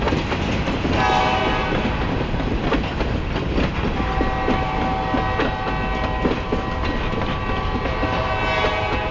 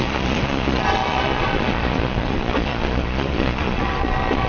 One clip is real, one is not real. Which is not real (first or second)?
second